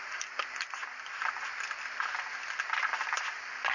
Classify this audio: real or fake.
real